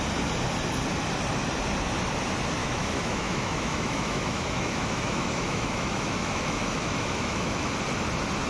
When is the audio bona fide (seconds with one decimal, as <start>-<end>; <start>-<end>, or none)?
0.0-2.6; 7.7-8.5